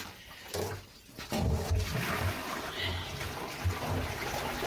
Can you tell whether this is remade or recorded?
recorded